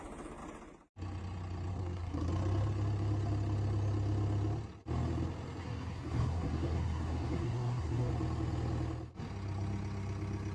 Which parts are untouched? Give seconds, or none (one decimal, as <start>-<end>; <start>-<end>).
0.0-1.7; 2.3-5.6; 8.1-10.5